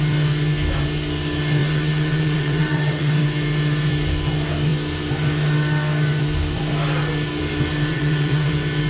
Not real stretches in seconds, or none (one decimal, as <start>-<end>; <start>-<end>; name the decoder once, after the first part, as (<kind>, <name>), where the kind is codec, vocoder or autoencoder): 1.6-3.1 (vocoder, WaveNeXt); 7.9-8.5